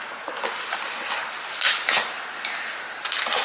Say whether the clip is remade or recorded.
recorded